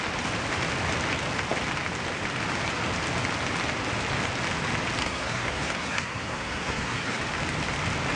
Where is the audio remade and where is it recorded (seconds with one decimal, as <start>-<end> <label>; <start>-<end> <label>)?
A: 0.0-5.0 recorded; 5.0-7.2 remade; 7.2-8.2 recorded